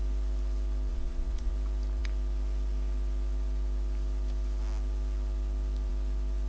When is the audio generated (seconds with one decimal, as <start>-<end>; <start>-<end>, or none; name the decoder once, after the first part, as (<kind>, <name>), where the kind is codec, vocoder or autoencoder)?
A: 0.9-1.5 (vocoder, Vocos)